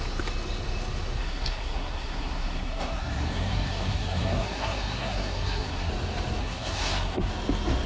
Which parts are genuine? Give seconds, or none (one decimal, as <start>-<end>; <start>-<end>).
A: 0.0-1.2; 5.9-6.4; 7.3-7.9